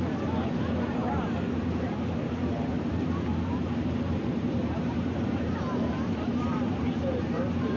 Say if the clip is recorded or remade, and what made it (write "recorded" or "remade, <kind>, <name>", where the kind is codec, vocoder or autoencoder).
remade, vocoder, BigVGAN v2